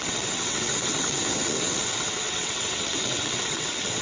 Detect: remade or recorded remade